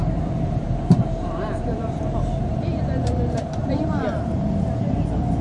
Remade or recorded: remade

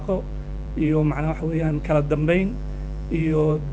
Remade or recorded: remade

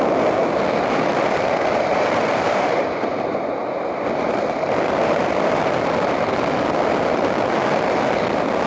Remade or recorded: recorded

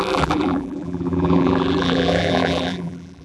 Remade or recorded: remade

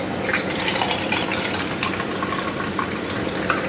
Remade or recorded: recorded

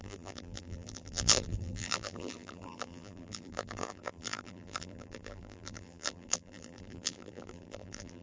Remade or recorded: remade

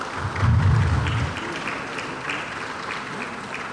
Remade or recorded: recorded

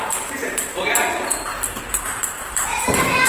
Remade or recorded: remade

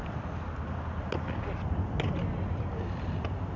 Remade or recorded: recorded